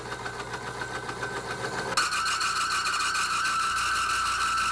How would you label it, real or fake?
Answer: real